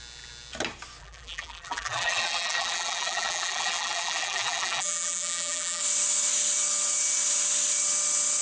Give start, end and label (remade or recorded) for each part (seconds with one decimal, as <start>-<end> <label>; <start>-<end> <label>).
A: 0.0-1.0 recorded; 1.0-5.8 remade; 5.8-8.4 recorded